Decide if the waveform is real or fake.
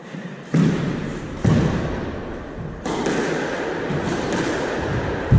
real